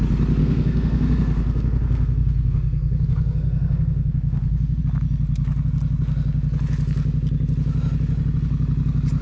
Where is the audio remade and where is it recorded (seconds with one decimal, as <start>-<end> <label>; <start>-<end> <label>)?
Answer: 0.0-0.4 recorded; 0.4-4.8 remade; 4.8-9.2 recorded